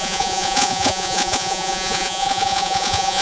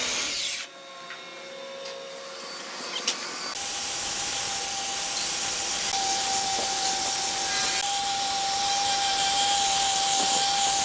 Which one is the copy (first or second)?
first